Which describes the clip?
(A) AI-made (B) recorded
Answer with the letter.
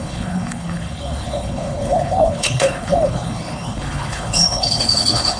A